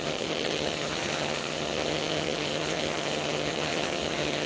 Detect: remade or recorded remade